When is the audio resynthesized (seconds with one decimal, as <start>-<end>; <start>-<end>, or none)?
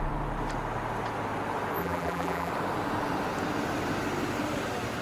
1.8-2.5